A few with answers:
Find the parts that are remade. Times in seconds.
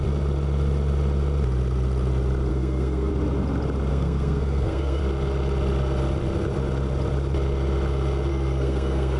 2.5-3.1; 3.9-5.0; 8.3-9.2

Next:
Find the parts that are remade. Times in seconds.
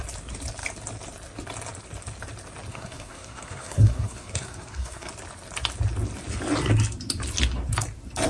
2.7-5.1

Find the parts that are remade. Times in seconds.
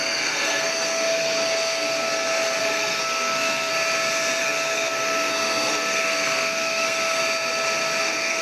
0.0-2.1; 2.6-3.7; 4.4-7.2; 8.0-8.4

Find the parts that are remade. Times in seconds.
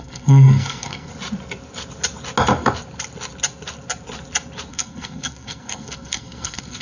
0.0-1.1; 4.7-6.8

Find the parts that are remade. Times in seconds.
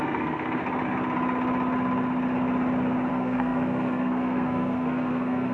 0.0-0.6; 3.1-5.5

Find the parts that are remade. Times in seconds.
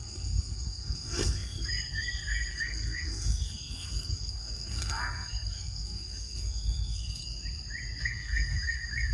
0.0-7.2; 8.0-9.1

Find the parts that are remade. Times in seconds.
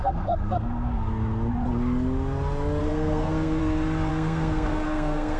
0.0-1.1; 2.8-3.6; 4.1-5.4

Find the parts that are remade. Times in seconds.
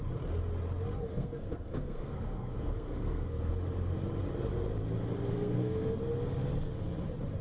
1.1-3.5; 5.3-6.0